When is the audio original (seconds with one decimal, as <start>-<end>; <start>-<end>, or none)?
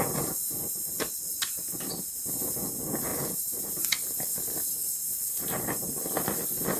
0.0-6.8